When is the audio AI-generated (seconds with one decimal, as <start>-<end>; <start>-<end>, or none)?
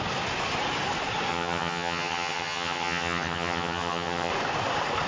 1.3-4.3